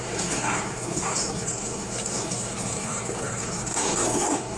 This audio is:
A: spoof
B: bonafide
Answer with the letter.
A